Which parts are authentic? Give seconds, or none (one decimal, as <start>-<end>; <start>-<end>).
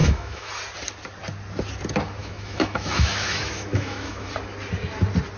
0.5-2.2; 4.3-5.4